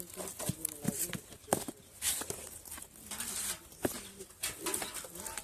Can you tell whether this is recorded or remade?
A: recorded